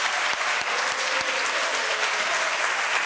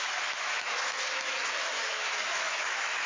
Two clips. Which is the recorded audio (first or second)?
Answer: first